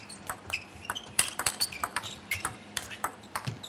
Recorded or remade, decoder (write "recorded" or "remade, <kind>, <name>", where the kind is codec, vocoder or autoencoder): remade, vocoder, BigVGAN v2